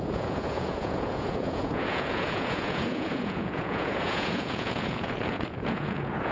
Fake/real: fake